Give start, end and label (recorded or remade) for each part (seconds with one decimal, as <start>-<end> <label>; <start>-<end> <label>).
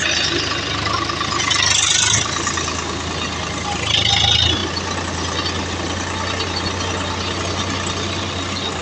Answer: 0.0-8.8 recorded